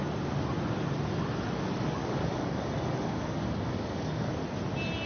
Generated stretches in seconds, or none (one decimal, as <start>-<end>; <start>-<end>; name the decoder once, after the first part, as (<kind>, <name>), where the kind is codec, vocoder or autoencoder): 2.0-4.3 (codec, DAC)